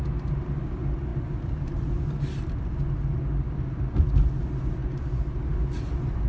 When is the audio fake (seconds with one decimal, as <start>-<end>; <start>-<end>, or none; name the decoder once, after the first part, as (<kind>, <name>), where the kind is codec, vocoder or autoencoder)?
none